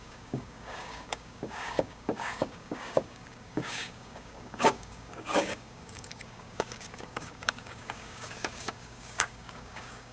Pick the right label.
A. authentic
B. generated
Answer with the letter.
B